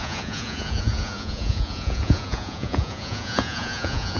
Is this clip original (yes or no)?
no